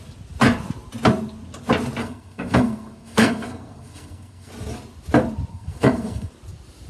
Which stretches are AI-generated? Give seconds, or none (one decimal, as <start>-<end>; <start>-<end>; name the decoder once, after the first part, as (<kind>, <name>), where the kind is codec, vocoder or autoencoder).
2.0-4.5 (codec, SNAC); 5.5-6.3